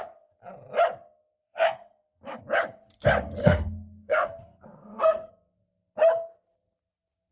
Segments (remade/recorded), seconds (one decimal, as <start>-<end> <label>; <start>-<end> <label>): 0.0-1.4 recorded; 1.4-2.4 remade; 2.4-3.4 recorded; 3.4-5.3 remade; 5.3-7.3 recorded